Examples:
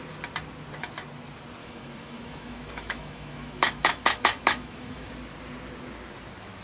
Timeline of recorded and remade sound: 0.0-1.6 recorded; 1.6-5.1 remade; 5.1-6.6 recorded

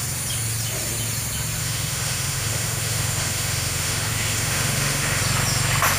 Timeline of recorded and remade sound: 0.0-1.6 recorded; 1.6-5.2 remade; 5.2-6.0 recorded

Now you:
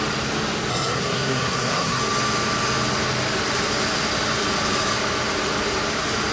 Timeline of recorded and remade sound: 0.0-0.7 recorded; 0.7-2.0 remade; 2.0-6.3 recorded

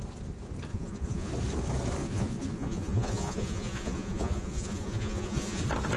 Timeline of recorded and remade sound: 0.0-0.7 recorded; 0.7-1.3 remade; 1.3-2.0 recorded; 2.0-5.6 remade; 5.6-6.0 recorded